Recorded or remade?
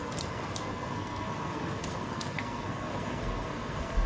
remade